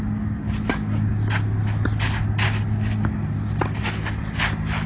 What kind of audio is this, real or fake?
real